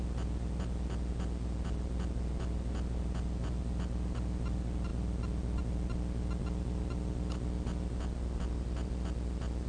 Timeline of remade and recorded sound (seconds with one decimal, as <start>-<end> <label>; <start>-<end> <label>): 0.0-9.7 recorded